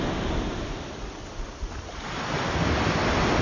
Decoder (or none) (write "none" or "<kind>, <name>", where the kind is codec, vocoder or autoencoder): none